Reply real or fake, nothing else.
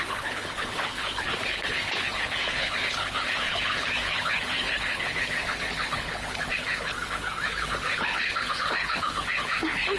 fake